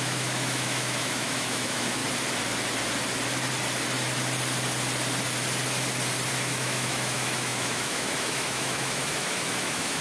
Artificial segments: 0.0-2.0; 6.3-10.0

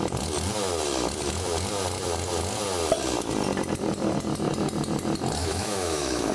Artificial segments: 5.4-6.3

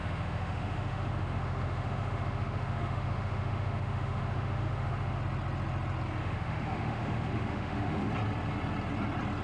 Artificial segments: 0.0-5.2; 6.2-8.1

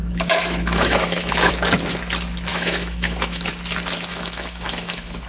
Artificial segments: 0.0-1.5; 2.5-3.5; 4.1-5.3

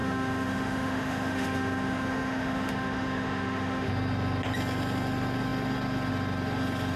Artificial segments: 0.0-3.9